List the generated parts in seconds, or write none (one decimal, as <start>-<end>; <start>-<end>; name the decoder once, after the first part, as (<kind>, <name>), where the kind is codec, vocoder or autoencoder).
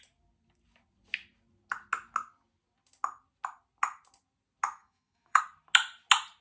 4.8-5.4 (autoencoder, DAC-VAE)